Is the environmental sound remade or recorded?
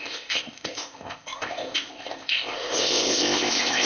remade